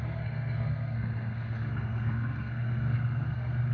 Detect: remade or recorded remade